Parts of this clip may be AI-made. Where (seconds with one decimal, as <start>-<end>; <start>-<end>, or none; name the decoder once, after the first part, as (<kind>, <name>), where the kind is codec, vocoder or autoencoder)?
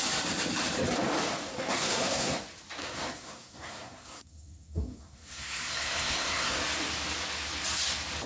1.5-2.4 (codec, SNAC); 2.8-6.6